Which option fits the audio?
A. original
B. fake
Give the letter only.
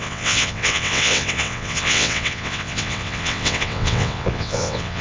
B